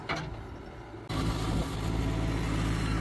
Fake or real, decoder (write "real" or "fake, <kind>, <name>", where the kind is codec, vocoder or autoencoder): real